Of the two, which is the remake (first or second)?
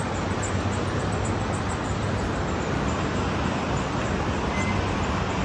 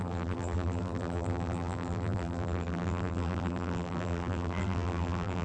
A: second